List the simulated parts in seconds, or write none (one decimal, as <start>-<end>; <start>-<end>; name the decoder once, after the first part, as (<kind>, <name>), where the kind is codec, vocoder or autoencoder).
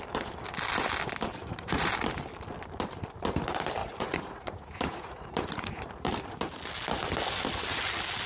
1.4-1.9 (vocoder, Vocos); 3.8-6.1